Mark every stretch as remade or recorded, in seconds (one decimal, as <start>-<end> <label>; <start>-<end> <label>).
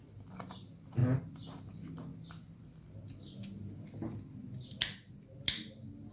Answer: 0.0-6.1 recorded